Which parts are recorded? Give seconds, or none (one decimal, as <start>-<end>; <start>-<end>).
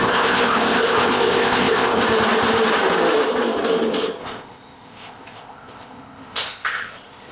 2.0-4.2